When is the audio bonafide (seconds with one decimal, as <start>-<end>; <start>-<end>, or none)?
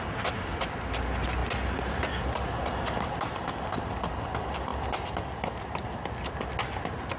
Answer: 0.0-7.2